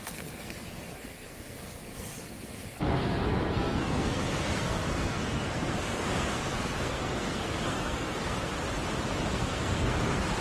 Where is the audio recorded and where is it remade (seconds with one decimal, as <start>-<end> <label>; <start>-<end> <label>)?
0.0-8.5 remade; 8.5-9.3 recorded; 9.3-10.4 remade